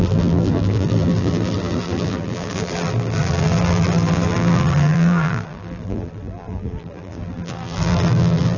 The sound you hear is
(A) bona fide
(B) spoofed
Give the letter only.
B